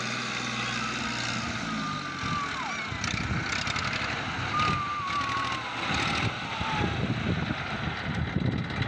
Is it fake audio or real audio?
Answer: real